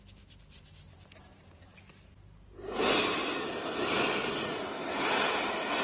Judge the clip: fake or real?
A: real